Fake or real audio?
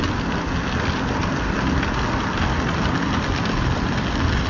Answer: real